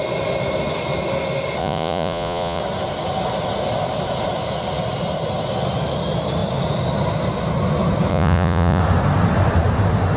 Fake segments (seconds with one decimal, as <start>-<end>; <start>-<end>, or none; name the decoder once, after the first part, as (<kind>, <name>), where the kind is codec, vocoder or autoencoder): 1.6-2.6 (vocoder, Vocos); 8.1-8.8